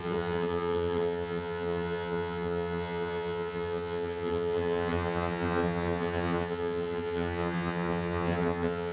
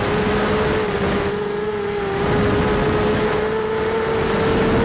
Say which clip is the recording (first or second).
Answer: second